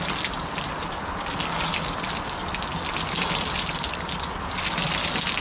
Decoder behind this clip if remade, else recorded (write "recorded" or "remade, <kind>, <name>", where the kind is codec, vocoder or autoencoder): recorded